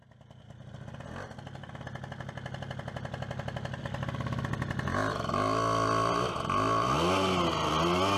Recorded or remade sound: recorded